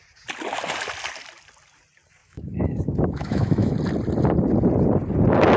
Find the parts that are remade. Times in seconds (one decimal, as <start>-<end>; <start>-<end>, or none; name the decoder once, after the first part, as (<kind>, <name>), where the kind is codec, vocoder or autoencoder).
2.2-3.8 (autoencoder, DAC-VAE)